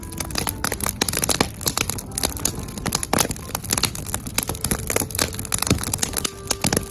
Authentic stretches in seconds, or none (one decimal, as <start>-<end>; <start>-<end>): 0.0-6.9